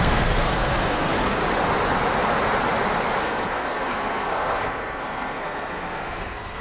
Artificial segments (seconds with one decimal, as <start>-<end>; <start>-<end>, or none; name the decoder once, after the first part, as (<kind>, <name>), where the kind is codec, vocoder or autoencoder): 0.0-1.4 (codec, SNAC); 3.2-6.6